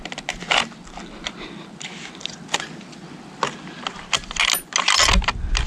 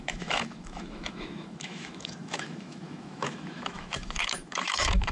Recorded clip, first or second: first